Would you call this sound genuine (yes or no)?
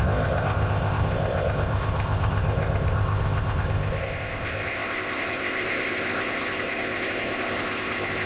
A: no